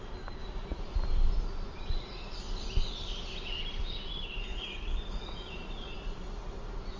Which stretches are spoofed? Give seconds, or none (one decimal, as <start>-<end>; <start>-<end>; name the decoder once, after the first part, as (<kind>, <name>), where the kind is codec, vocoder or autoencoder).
4.5-5.9 (vocoder, Vocos)